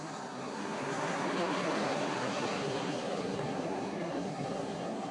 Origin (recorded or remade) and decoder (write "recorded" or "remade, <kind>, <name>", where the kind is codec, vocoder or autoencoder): remade, codec, SNAC